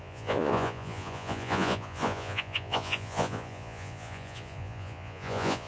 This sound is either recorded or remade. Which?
remade